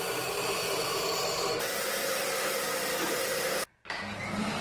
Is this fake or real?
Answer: fake